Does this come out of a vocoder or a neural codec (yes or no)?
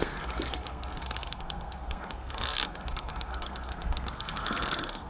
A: yes